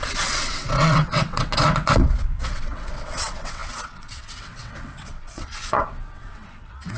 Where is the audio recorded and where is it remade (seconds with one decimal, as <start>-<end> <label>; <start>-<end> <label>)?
0.0-7.0 remade